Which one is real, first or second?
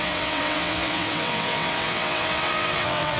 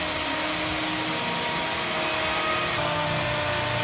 second